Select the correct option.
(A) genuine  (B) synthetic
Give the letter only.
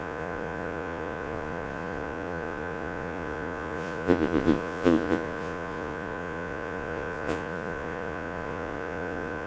B